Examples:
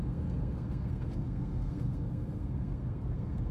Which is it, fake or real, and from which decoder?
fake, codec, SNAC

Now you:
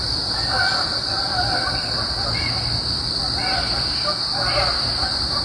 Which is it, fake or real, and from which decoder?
real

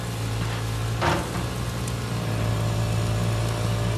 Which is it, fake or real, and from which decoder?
real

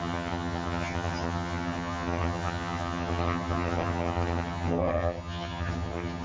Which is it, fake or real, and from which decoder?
fake, vocoder, HiFi-GAN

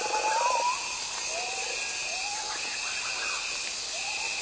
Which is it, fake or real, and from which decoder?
real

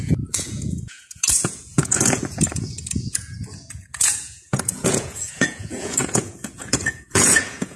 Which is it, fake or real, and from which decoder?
fake, vocoder, Vocos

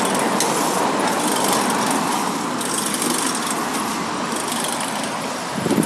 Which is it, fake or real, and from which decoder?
real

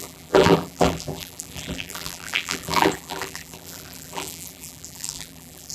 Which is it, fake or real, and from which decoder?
fake, vocoder, BigVGAN v2